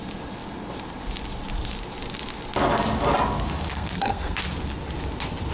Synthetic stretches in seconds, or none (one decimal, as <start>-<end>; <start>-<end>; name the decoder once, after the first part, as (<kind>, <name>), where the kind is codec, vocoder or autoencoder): 3.7-4.4 (codec, SNAC)